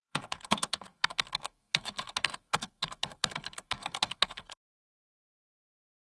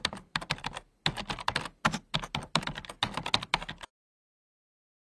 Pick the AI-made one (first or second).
first